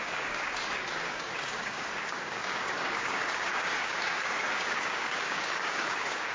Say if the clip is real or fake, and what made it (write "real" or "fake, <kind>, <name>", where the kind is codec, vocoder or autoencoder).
fake, codec, DAC